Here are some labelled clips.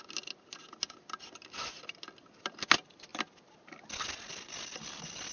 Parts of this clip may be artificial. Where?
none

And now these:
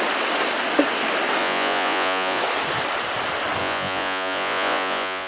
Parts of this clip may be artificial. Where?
1.4-2.4 (vocoder, Vocos); 3.6-5.3

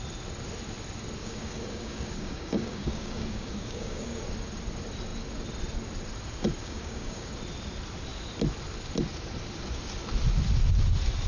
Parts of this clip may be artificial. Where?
1.2-4.2 (codec, DAC); 6.6-7.3